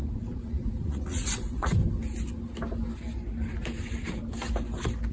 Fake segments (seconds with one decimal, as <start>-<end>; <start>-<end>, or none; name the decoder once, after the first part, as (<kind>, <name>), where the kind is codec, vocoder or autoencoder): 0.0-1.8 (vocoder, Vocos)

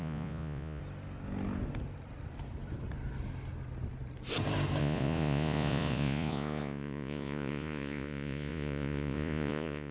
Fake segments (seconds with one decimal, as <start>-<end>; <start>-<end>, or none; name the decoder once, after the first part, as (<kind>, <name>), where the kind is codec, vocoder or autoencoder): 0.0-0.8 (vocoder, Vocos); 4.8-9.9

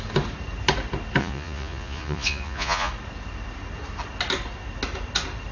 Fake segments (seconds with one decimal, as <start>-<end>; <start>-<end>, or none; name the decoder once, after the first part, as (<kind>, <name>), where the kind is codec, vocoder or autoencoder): 1.2-2.9 (vocoder, Vocos)

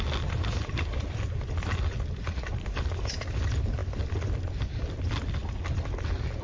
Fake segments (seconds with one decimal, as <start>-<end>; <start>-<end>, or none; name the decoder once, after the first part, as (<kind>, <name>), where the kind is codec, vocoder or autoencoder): none

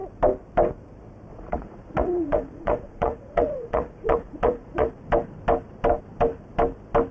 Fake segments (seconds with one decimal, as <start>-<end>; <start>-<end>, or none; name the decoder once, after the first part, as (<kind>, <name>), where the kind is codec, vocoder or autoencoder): 1.3-4.9 (vocoder, Vocos)

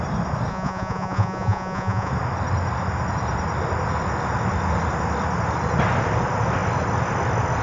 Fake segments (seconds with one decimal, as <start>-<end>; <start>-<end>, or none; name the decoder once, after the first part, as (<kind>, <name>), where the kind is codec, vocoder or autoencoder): 0.5-2.1 (vocoder, Vocos)